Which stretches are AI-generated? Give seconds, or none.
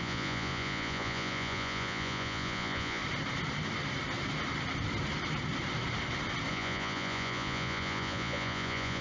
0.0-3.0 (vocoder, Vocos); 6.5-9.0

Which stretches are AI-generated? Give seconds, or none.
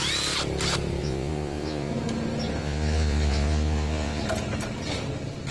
1.0-1.9 (vocoder, Vocos); 2.6-4.2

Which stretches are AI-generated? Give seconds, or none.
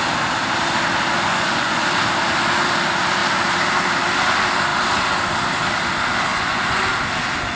1.3-1.8 (vocoder, Vocos); 6.3-6.8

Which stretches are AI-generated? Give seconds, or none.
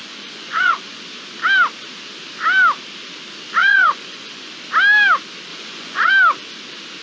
0.0-1.0 (vocoder, Vocos); 3.6-4.5; 5.5-6.1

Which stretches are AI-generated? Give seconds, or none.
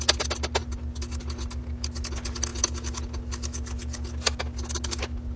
none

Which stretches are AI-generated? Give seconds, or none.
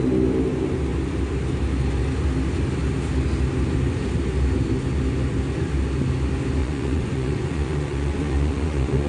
6.6-9.1 (vocoder, Vocos)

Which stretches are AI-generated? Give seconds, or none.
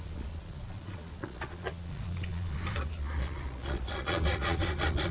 0.0-5.1 (vocoder, Vocos)